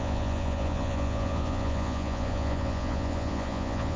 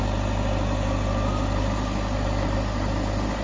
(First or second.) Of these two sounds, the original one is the second